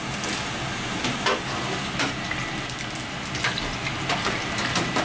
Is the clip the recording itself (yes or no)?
yes